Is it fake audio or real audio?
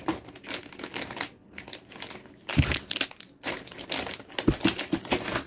real